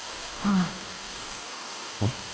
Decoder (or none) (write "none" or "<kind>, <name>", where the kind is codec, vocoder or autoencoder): codec, DAC